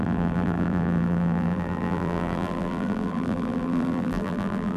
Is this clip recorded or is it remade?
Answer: remade